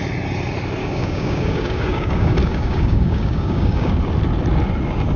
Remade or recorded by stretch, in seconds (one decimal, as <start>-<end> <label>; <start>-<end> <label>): 0.0-0.8 recorded; 0.8-3.9 remade; 3.9-5.2 recorded